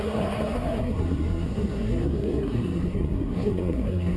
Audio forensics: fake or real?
fake